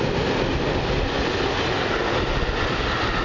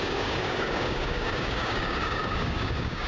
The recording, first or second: first